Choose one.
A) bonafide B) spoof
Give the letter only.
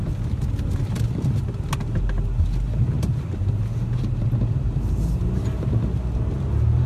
A